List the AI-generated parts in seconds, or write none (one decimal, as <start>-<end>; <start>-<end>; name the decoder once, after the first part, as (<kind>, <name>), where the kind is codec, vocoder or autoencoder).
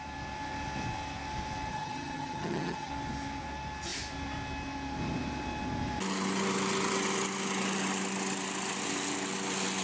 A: 1.7-2.9 (vocoder, HiFi-GAN)